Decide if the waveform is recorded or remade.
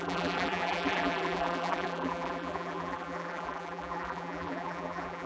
remade